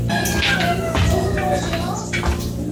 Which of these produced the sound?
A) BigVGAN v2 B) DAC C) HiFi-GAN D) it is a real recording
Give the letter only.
D